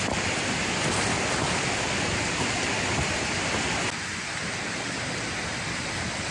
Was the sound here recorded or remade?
recorded